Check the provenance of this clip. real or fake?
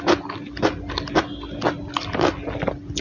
real